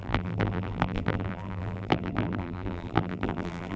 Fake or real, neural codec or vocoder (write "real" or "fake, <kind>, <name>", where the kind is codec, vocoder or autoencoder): fake, vocoder, BigVGAN v2